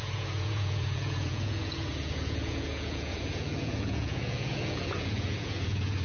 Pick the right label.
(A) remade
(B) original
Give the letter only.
A